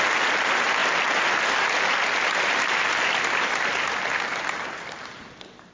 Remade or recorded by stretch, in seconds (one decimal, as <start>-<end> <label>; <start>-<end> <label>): 0.0-5.7 recorded